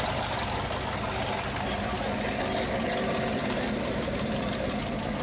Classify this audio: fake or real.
real